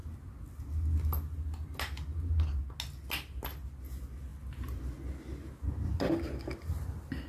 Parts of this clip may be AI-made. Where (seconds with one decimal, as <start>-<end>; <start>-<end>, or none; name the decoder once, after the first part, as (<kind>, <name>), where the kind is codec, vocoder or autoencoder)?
none